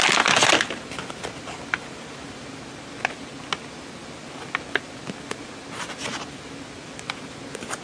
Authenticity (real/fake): real